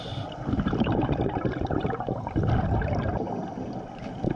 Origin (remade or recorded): remade